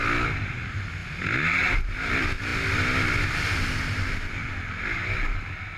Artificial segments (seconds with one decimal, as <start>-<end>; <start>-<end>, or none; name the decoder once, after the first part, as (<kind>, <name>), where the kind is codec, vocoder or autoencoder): none